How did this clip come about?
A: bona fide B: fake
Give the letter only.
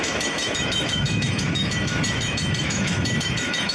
B